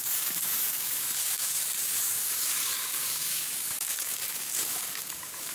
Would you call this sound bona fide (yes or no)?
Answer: no